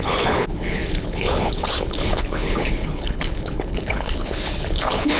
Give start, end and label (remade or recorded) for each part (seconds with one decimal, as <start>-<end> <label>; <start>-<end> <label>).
0.0-5.2 remade